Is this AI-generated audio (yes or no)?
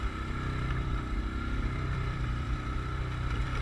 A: yes